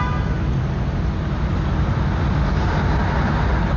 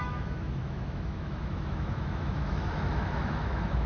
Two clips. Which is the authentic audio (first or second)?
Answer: first